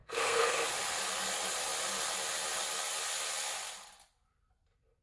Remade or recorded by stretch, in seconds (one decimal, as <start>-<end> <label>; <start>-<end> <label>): 0.0-0.6 remade; 0.6-5.0 recorded